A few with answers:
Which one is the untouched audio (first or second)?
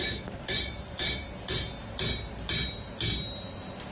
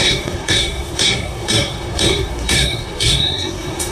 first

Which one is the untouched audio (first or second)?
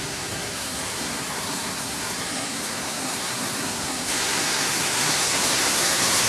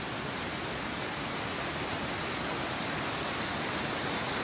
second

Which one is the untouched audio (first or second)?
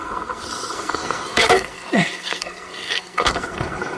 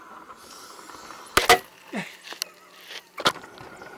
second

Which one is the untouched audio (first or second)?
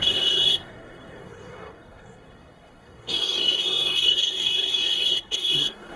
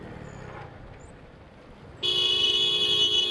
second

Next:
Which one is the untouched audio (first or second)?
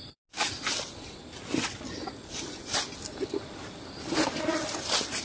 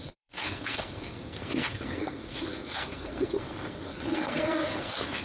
first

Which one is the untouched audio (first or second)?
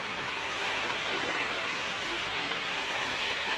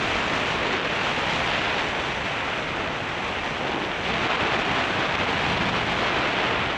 second